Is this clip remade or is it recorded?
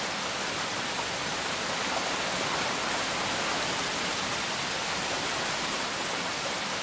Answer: recorded